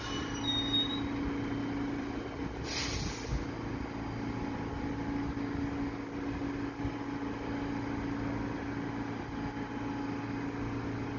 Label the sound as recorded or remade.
recorded